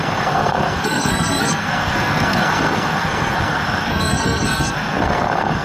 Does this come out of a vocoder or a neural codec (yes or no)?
yes